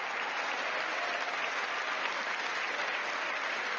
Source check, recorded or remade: recorded